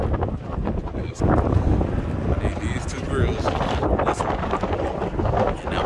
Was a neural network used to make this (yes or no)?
no